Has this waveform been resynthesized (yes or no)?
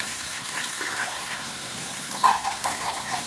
yes